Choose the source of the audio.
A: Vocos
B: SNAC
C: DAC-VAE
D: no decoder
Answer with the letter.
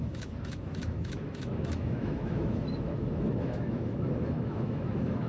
C